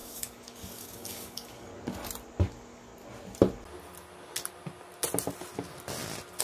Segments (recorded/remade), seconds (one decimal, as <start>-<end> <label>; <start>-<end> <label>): 0.0-1.7 remade; 1.7-2.5 recorded; 2.5-2.9 remade; 2.9-6.4 recorded